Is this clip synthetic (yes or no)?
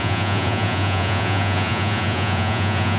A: yes